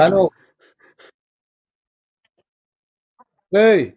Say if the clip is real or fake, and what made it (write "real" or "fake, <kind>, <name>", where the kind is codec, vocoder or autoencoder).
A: real